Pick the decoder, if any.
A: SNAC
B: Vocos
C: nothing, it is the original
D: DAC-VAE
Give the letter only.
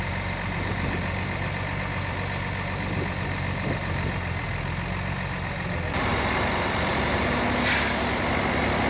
C